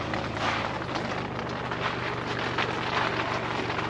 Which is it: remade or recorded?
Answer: recorded